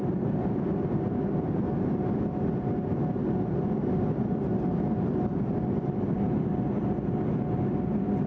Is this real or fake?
real